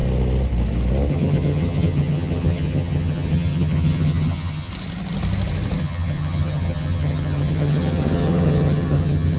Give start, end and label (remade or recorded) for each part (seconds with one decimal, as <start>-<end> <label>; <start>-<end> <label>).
0.0-1.1 recorded; 1.1-4.7 remade; 4.7-5.8 recorded; 5.8-9.4 remade